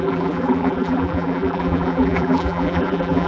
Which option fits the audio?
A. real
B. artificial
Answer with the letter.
B